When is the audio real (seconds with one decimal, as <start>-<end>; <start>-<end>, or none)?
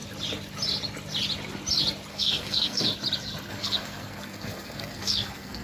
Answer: 0.0-2.1; 2.9-3.5